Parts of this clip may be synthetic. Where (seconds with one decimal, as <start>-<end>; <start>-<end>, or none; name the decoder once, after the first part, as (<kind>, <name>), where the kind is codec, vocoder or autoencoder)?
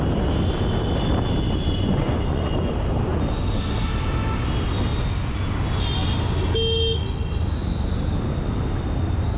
1.6-2.7 (vocoder, Vocos)